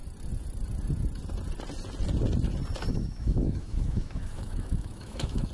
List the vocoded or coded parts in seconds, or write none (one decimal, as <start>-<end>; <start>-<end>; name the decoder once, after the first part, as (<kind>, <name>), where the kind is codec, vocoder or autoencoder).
2.9-5.5 (autoencoder, DAC-VAE)